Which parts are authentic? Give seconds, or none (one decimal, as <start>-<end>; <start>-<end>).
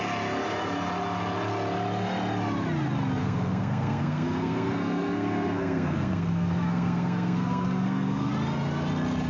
0.0-3.2; 8.3-9.3